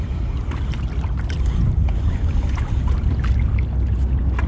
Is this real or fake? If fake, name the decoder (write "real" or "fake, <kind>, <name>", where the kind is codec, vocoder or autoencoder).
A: real